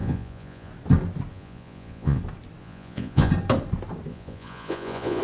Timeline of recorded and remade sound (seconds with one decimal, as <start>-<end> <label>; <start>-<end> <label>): 0.0-0.7 remade; 0.7-1.3 recorded; 1.3-2.2 remade; 2.2-2.6 recorded; 2.6-3.3 remade; 3.3-4.1 recorded; 4.1-5.2 remade